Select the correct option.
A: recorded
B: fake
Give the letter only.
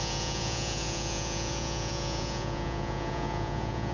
B